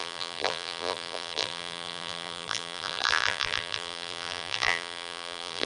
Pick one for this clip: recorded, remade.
remade